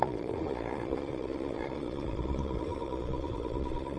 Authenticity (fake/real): fake